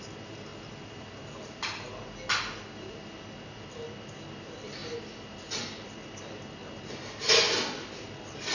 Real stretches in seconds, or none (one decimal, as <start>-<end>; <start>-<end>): 0.0-8.5